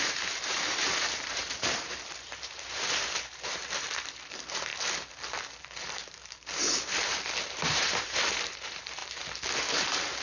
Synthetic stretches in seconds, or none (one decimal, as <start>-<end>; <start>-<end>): 0.0-4.7; 5.6-10.2